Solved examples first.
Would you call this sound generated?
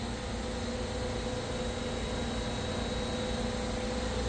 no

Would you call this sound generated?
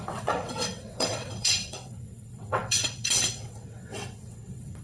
yes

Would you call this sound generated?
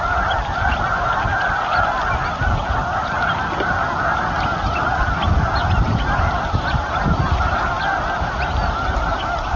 no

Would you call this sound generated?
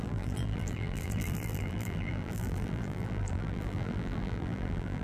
yes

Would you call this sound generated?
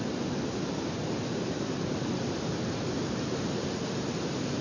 yes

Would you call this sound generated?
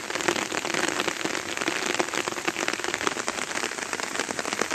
no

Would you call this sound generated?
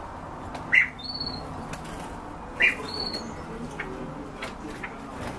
no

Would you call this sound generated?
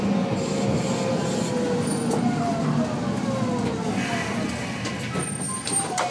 no